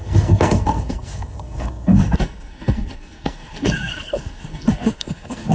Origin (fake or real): fake